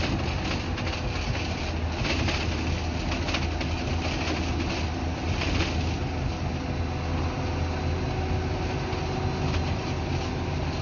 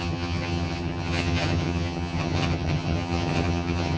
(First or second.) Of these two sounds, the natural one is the first